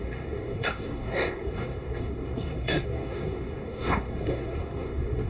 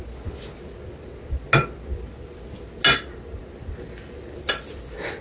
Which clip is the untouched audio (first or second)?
second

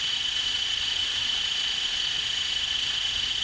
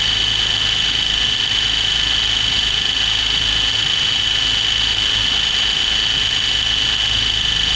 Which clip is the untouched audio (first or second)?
second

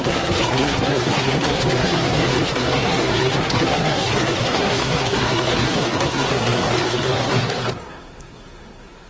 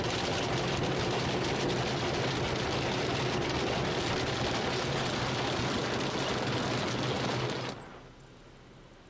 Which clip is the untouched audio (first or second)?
second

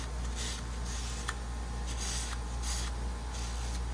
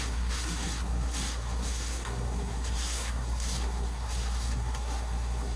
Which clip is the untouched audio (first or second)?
first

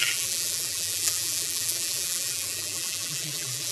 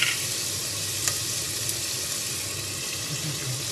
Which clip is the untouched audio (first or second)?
second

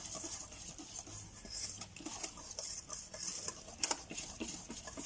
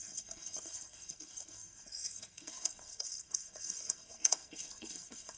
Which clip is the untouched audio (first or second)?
first